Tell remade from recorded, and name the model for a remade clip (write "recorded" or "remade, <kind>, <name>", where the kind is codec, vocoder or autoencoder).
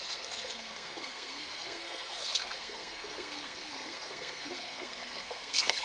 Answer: remade, codec, SNAC